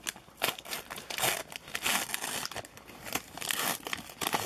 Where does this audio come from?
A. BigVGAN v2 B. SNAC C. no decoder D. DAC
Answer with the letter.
C